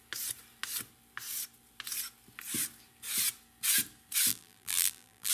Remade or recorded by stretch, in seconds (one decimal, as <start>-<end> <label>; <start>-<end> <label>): 0.0-4.3 recorded; 4.3-5.3 remade